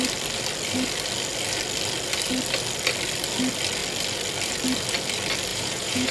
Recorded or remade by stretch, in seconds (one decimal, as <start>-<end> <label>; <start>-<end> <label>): 0.0-5.5 recorded; 5.5-6.1 remade